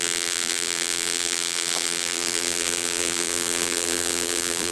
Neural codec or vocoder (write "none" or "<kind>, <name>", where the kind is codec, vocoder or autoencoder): vocoder, BigVGAN v2